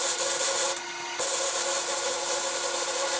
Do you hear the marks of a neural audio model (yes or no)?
no